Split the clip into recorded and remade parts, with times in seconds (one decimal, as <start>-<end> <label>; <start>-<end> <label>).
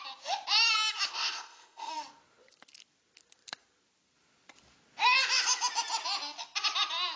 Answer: 0.0-1.1 recorded; 1.1-1.9 remade; 1.9-7.2 recorded